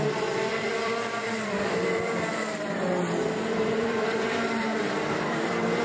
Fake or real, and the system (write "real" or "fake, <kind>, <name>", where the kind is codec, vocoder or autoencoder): fake, vocoder, BigVGAN v2